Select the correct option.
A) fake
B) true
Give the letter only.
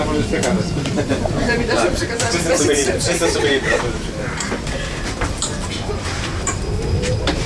A